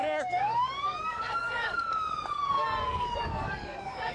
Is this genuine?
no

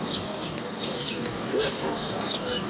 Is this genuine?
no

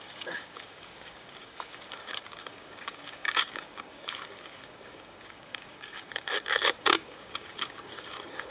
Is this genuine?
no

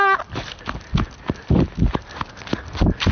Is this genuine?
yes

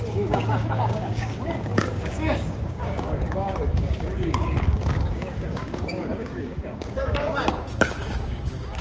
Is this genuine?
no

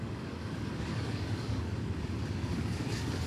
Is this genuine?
no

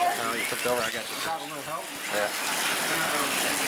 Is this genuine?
yes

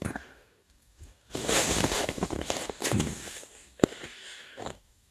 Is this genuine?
no